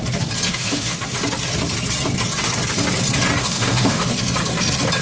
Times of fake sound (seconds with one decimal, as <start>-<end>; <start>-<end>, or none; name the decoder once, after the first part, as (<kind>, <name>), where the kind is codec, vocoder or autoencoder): 0.5-1.0 (autoencoder, DAC-VAE); 3.4-4.0